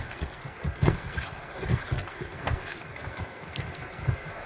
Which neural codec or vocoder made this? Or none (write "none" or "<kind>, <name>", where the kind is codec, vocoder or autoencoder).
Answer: codec, SNAC